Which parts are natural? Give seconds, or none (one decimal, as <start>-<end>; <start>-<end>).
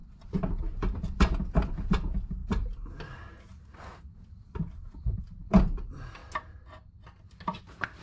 2.4-5.2; 6.2-7.6